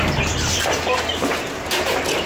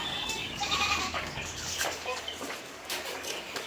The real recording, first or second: first